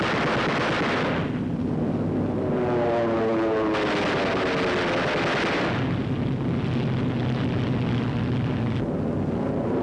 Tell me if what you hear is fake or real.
real